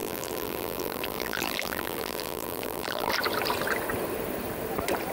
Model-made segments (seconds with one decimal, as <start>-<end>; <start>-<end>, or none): 0.0-3.1